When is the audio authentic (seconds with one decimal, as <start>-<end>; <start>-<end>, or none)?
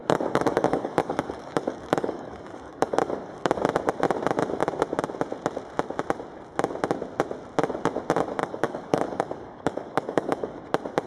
3.6-8.4; 10.6-11.1